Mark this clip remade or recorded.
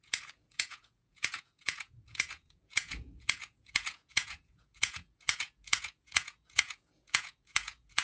remade